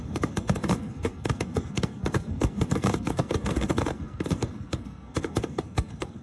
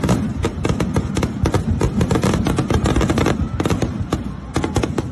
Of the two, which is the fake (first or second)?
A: first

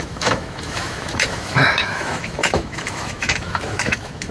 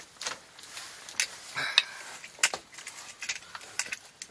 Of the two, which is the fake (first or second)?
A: first